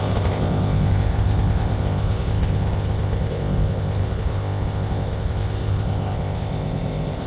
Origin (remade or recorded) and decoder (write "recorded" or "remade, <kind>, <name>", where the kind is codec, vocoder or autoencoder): remade, codec, ZipCodec